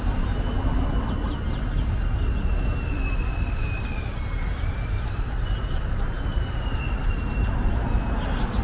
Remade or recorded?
recorded